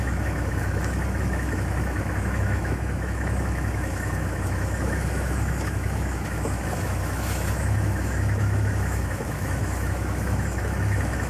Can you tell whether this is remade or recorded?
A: remade